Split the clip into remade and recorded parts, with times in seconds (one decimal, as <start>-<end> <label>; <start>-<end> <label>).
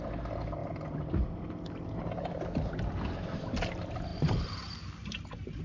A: 0.0-5.6 recorded